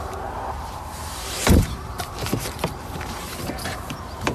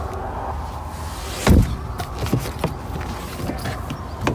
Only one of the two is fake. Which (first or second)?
first